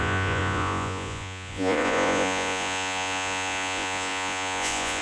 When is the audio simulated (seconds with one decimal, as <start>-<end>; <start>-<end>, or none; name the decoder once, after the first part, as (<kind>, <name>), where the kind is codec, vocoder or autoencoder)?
0.0-5.0 (vocoder, Vocos)